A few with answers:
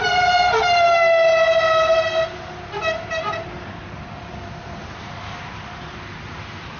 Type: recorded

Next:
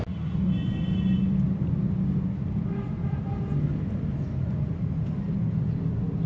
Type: recorded